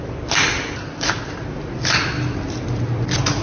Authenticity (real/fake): real